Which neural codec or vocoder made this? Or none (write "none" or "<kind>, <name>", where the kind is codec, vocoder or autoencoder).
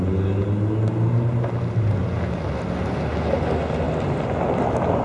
none